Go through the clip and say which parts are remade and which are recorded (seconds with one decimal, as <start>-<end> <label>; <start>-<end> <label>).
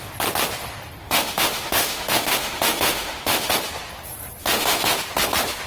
0.0-1.0 recorded; 1.0-3.5 remade; 3.5-4.4 recorded; 4.4-5.0 remade; 5.0-5.7 recorded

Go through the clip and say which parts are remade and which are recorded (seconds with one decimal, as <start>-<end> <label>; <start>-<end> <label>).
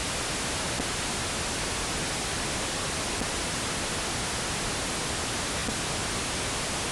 0.0-6.9 recorded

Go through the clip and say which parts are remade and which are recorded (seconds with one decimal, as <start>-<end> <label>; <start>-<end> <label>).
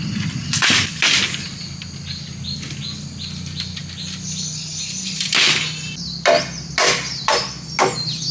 0.0-8.3 recorded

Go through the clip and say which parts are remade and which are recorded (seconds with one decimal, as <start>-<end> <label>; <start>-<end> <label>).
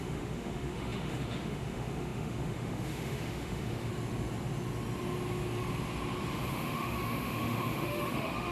0.0-3.9 remade; 3.9-6.5 recorded; 6.5-8.5 remade